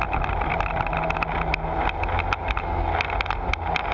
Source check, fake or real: real